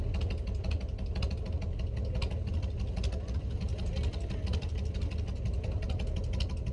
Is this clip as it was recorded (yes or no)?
yes